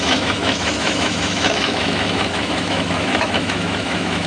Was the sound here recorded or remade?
remade